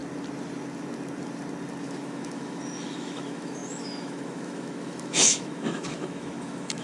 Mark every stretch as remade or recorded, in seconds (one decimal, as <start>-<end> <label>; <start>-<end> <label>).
0.0-1.8 recorded; 1.8-6.8 remade